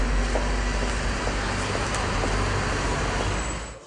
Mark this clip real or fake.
real